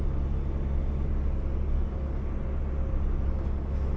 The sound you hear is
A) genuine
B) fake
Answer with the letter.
A